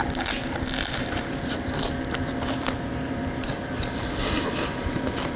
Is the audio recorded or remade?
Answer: recorded